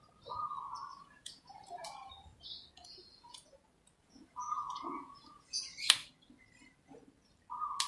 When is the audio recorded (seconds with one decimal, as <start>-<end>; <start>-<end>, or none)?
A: 0.0-0.9; 2.1-2.8; 3.5-4.0; 5.6-7.9